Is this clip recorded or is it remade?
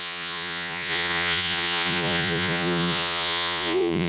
remade